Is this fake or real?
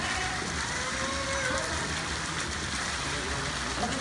real